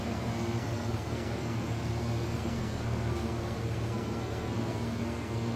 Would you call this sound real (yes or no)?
no